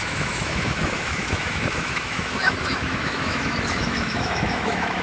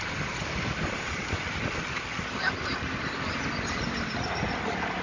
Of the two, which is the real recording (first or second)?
second